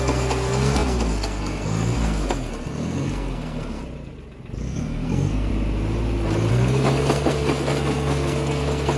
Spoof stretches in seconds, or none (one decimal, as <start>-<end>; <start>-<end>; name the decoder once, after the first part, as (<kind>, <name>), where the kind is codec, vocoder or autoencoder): 0.0-3.8 (codec, SNAC); 4.6-5.5; 6.5-9.0